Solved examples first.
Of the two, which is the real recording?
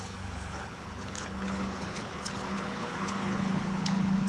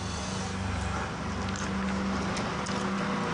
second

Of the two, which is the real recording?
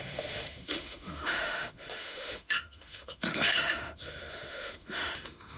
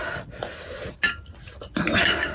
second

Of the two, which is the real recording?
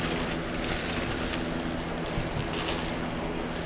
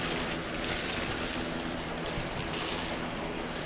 first